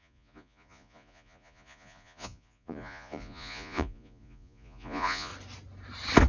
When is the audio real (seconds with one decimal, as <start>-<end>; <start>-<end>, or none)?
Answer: 5.3-6.3